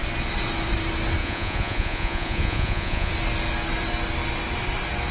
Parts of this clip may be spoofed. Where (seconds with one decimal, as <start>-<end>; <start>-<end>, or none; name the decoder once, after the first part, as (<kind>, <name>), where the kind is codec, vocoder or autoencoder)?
1.2-3.1 (vocoder, Vocos)